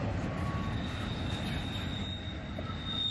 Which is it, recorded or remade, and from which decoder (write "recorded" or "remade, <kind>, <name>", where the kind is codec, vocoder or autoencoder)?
recorded